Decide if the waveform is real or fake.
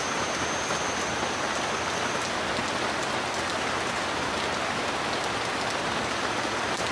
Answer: real